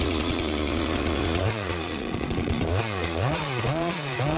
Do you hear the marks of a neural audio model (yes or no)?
yes